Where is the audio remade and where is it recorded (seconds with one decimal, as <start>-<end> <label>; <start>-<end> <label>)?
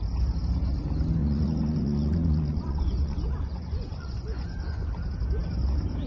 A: 0.0-1.2 recorded; 1.2-4.9 remade; 4.9-6.1 recorded